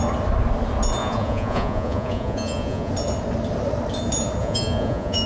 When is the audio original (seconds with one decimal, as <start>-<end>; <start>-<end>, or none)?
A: 0.0-1.0; 2.9-4.4